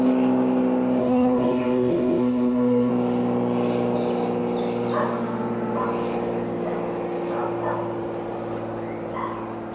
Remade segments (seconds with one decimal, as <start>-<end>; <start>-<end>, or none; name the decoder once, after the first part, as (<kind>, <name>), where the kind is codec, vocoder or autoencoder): 1.0-2.9 (codec, SNAC)